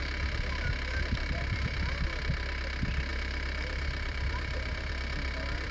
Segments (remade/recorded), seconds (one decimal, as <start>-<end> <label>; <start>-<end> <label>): 0.0-3.1 recorded; 3.1-4.9 remade; 4.9-5.7 recorded